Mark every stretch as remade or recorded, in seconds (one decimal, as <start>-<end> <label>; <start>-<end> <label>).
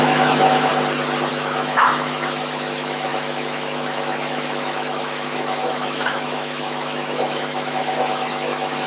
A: 0.0-0.7 remade; 0.7-1.3 recorded; 1.3-8.9 remade